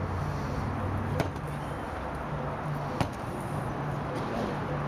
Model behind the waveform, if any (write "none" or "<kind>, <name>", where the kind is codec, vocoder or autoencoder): none